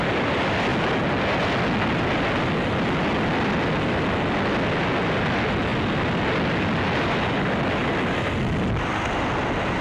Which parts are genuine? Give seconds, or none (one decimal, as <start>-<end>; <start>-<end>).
0.0-9.8